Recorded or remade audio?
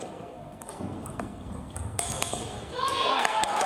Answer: remade